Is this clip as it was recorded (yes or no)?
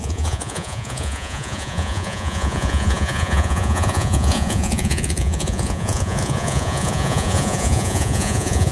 no